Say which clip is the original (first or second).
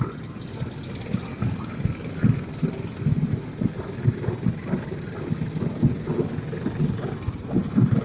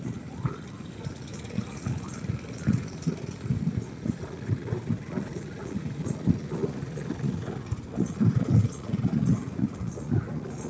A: first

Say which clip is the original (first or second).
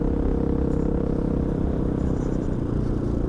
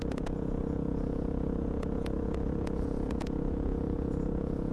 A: first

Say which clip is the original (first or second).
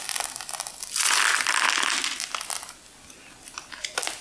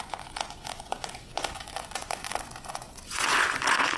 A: first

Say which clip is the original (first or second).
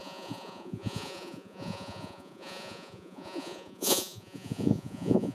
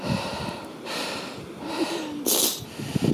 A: second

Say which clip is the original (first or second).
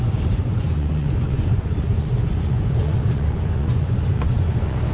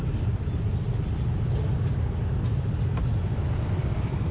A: second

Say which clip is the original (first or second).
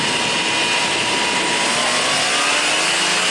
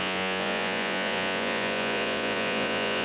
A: first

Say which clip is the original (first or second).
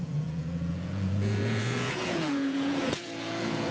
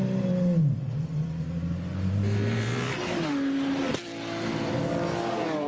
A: second